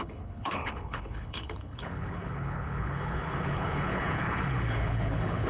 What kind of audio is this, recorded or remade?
remade